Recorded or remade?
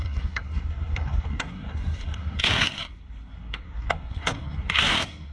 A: remade